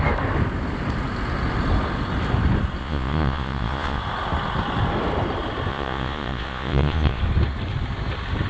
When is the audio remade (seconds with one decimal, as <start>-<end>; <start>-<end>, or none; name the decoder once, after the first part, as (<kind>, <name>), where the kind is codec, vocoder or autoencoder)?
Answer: 2.8-4.0 (vocoder, Vocos); 5.7-7.2